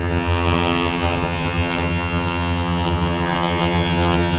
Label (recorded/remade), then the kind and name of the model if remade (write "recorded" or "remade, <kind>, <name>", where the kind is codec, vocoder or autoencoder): remade, vocoder, HiFi-GAN